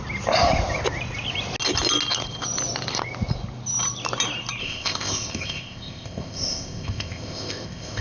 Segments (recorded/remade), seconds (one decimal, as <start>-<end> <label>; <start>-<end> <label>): 0.0-4.6 recorded; 4.6-8.0 remade

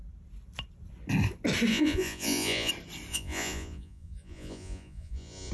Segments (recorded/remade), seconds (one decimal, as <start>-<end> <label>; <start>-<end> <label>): 0.0-1.7 recorded; 1.7-2.7 remade; 2.7-3.1 recorded; 3.1-5.5 remade

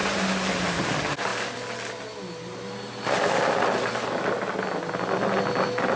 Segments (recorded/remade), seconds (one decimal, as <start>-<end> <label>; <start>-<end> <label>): 0.0-6.0 recorded